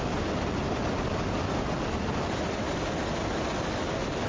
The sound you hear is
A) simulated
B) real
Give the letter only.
B